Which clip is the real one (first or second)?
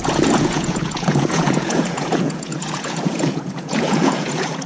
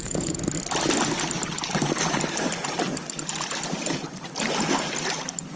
second